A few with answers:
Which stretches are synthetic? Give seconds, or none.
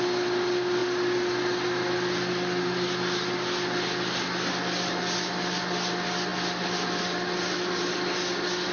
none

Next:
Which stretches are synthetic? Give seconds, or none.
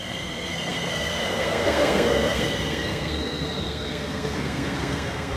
0.0-5.4 (codec, SNAC)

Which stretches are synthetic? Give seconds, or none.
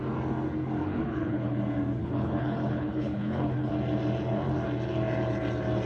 0.8-1.6 (codec, HILCodec); 2.0-3.7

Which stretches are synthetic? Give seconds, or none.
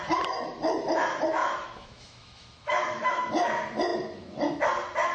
1.4-3.3 (autoencoder, DAC-VAE)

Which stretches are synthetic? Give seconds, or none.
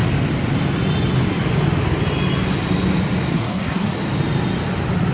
3.3-3.9 (codec, SNAC)